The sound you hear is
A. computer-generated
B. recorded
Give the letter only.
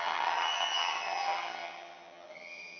A